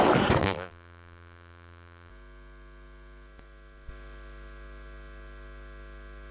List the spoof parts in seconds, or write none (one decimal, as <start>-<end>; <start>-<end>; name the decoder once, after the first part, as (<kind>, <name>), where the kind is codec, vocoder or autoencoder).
0.4-2.1 (vocoder, BigVGAN v2)